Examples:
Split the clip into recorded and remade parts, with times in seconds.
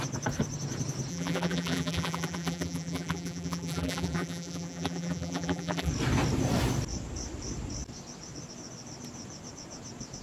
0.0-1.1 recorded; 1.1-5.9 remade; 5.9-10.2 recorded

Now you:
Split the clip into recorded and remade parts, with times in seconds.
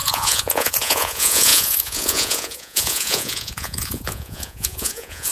0.0-5.3 remade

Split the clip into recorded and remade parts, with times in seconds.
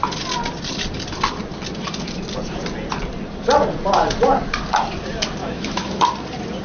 0.0-5.4 recorded; 5.4-6.0 remade; 6.0-6.6 recorded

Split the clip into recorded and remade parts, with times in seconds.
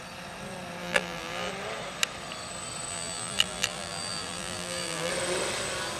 0.0-0.8 recorded; 0.8-1.5 remade; 1.5-2.9 recorded; 2.9-5.1 remade; 5.1-6.0 recorded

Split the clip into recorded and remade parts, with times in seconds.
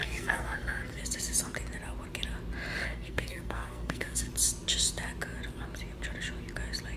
0.0-1.0 remade; 1.0-2.8 recorded; 2.8-4.3 remade; 4.3-7.0 recorded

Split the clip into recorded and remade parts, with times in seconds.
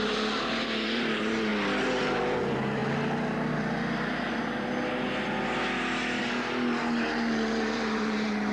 0.0-1.5 remade; 1.5-2.0 recorded; 2.0-2.8 remade; 2.8-6.2 recorded; 6.2-8.5 remade